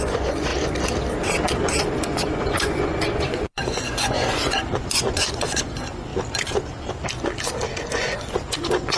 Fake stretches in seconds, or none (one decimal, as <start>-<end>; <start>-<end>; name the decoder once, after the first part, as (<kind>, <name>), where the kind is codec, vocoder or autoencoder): 0.0-0.5 (vocoder, Vocos); 1.8-6.1; 7.9-9.0